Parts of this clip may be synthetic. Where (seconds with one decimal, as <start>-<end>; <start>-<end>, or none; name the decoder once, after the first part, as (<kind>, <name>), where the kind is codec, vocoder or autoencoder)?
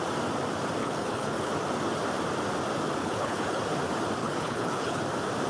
0.8-1.5 (codec, HILCodec); 3.0-3.6; 4.2-5.0